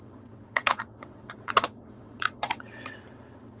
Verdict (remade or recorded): remade